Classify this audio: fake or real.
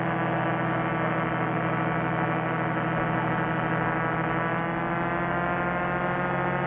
real